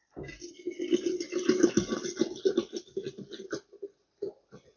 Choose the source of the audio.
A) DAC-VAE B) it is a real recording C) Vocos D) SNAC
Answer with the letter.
B